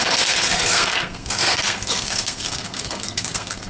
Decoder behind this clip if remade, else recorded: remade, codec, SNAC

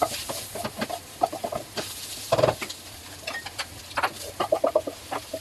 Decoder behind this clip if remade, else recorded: recorded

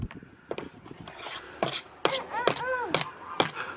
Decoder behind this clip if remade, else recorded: recorded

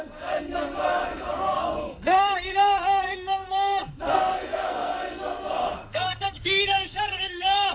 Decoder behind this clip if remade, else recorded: remade, codec, SNAC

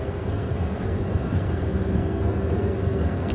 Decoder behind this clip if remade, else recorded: remade, codec, SNAC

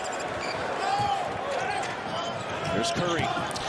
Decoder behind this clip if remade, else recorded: recorded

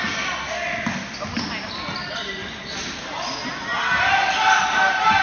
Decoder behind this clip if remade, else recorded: recorded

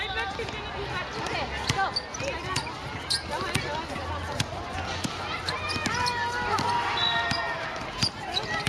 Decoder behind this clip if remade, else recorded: recorded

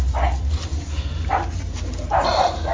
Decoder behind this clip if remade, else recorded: recorded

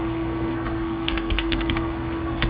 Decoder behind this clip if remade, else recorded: remade, codec, SNAC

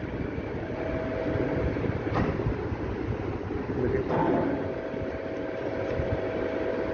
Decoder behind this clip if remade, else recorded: recorded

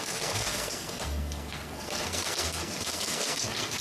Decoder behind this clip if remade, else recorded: remade, codec, SNAC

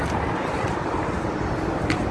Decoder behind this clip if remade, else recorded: recorded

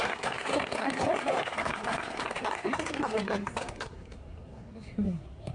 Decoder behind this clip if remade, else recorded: remade, codec, SNAC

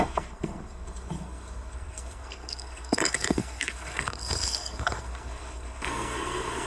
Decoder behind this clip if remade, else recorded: remade, codec, SNAC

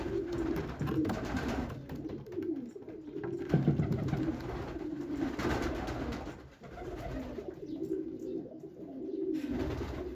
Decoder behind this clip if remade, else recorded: recorded